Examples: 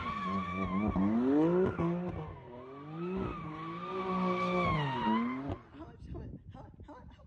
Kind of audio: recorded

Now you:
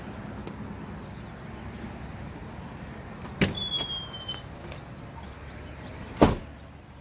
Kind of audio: recorded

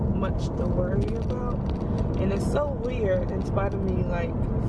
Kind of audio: recorded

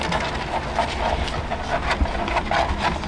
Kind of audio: recorded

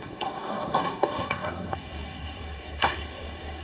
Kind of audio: remade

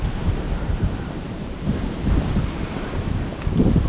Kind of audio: remade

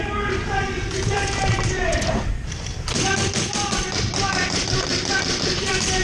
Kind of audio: remade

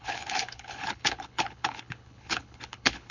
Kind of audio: remade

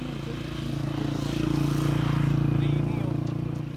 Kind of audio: recorded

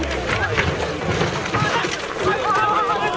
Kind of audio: recorded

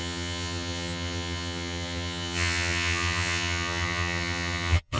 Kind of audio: remade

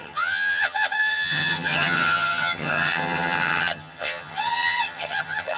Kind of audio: remade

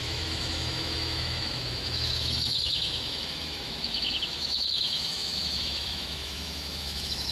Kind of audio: remade